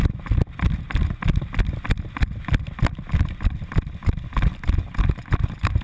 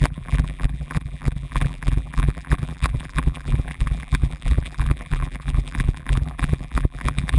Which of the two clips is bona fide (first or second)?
first